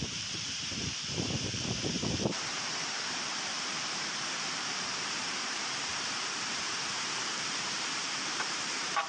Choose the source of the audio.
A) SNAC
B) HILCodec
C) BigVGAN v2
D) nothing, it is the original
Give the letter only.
C